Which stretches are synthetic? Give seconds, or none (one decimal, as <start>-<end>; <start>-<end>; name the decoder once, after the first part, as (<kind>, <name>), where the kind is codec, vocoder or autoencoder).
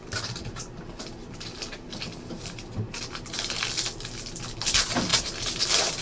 0.0-3.6 (vocoder, BigVGAN v2); 5.1-5.6